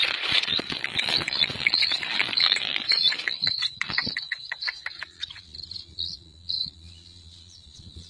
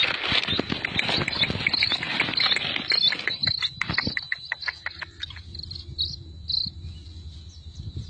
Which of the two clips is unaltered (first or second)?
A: second